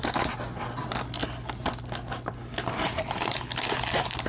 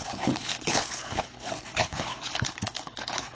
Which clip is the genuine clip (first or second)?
first